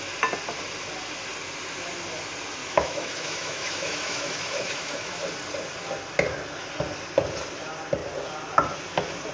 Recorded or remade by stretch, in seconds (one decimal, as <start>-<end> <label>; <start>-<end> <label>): 0.0-2.6 recorded; 2.6-5.2 remade; 5.2-9.3 recorded